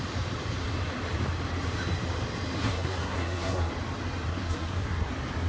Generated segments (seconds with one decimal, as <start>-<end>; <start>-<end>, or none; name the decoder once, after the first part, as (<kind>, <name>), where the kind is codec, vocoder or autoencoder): 2.6-3.7 (codec, SNAC); 4.3-5.1